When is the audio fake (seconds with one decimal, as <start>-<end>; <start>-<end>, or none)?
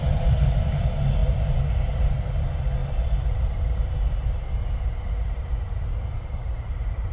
none